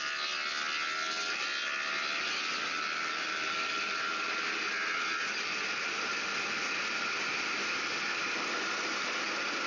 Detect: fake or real real